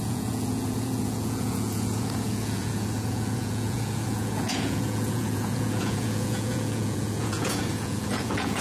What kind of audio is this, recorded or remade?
remade